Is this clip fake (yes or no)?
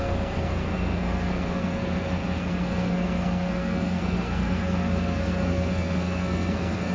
yes